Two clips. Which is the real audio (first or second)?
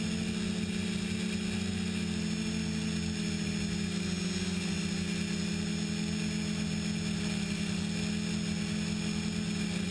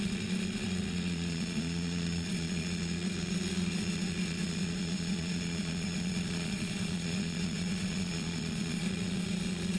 first